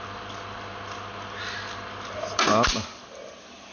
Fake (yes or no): no